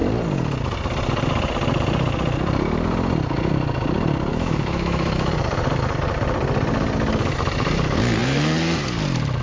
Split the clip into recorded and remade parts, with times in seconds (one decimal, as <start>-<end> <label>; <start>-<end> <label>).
0.0-4.3 recorded; 4.3-5.3 remade; 5.3-9.4 recorded